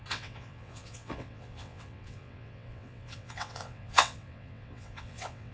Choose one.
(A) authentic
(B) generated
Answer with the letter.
B